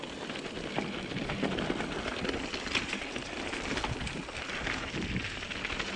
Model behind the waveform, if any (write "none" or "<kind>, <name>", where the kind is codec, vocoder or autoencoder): none